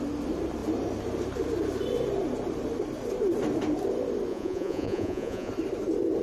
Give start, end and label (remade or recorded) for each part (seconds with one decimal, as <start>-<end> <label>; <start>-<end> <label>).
0.0-4.3 recorded; 4.3-5.5 remade; 5.5-6.2 recorded